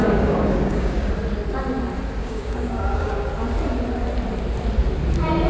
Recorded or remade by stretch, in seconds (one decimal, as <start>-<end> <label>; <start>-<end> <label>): 0.0-1.1 remade; 1.1-2.2 recorded; 2.2-3.3 remade; 3.3-5.5 recorded